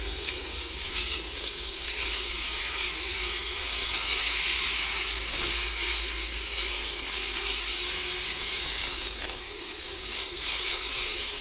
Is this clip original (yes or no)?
no